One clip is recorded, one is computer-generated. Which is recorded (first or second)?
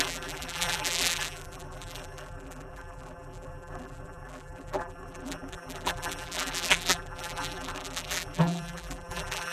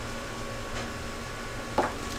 second